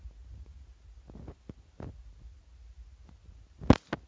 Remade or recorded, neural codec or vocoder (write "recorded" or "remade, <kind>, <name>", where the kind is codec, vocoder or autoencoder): recorded